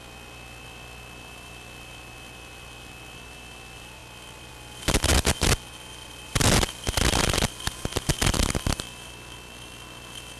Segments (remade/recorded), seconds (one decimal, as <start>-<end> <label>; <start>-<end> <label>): 0.0-10.4 recorded